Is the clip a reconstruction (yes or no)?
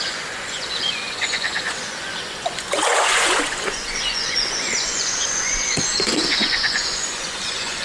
yes